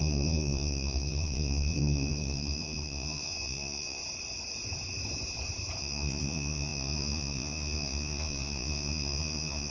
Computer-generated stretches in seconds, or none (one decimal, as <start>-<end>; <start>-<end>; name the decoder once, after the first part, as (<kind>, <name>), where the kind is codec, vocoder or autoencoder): 0.0-4.0 (vocoder, Vocos); 5.8-9.7